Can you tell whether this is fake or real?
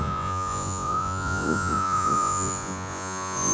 fake